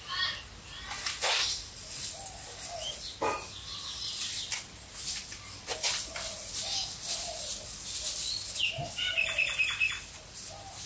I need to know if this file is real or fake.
real